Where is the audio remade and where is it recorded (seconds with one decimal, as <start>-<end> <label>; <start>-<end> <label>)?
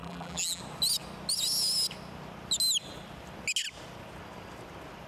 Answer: 0.0-0.6 remade; 0.6-5.1 recorded